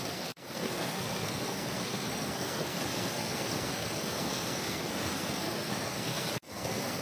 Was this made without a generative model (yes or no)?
no